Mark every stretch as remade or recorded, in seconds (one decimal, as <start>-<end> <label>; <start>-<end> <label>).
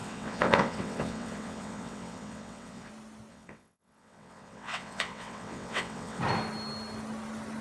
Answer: 0.0-2.9 remade; 2.9-3.3 recorded; 3.3-6.2 remade; 6.2-7.6 recorded